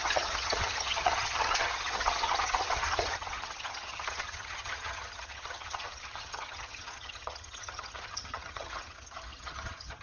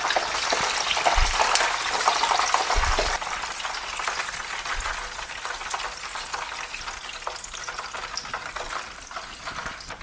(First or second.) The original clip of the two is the second